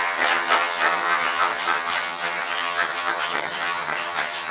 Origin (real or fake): fake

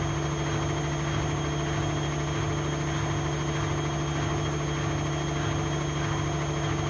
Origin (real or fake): real